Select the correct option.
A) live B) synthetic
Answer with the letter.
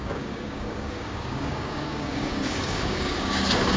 B